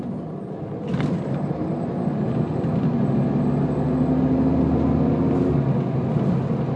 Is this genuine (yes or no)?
yes